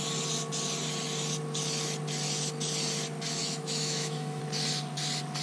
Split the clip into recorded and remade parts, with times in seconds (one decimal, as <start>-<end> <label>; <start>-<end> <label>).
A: 0.0-3.4 recorded; 3.4-4.4 remade; 4.4-5.4 recorded